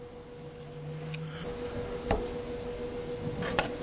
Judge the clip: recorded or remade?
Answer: recorded